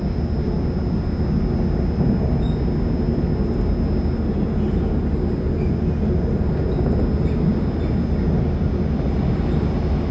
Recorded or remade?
recorded